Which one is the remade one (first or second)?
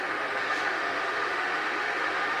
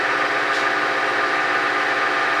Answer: first